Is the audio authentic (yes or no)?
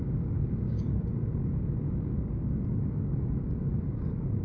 no